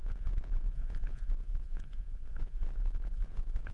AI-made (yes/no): yes